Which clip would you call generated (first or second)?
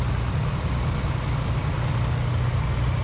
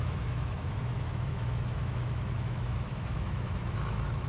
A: second